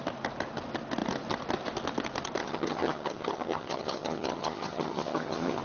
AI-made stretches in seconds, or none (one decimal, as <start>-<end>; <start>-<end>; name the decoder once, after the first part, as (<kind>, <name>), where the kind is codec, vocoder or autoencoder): 2.4-5.6 (vocoder, HiFi-GAN)